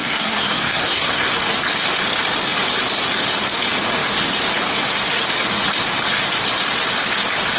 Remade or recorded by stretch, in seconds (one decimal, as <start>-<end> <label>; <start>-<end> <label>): 0.0-1.3 remade; 1.3-7.6 recorded

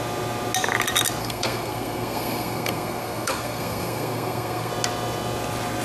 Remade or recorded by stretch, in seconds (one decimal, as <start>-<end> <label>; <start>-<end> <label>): 0.0-1.2 recorded; 1.2-4.7 remade; 4.7-5.8 recorded

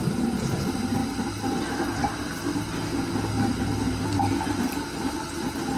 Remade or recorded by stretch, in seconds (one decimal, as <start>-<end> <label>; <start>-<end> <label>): 0.0-1.0 remade; 1.0-4.5 recorded; 4.5-5.8 remade

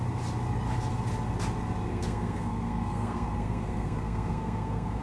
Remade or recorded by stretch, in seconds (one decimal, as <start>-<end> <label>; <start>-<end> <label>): 0.0-1.9 recorded; 1.9-5.0 remade